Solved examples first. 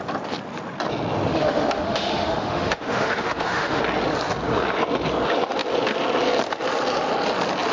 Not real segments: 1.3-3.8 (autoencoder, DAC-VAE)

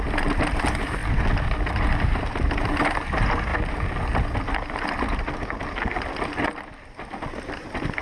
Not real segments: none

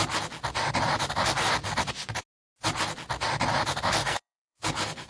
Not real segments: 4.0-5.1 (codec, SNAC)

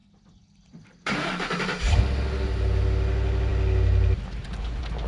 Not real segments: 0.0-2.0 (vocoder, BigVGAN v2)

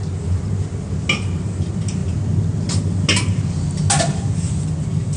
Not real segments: none

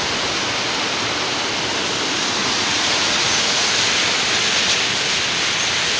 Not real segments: 2.4-3.7 (vocoder, Vocos)